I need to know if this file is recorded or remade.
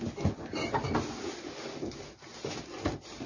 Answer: recorded